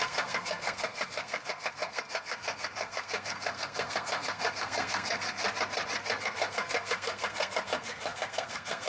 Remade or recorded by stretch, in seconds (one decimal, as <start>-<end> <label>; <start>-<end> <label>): 0.0-5.4 remade; 5.4-6.2 recorded; 6.2-8.9 remade